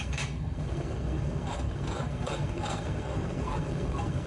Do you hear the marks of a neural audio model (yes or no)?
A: yes